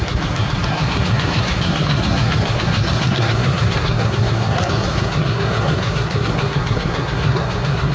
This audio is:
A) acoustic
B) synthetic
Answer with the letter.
B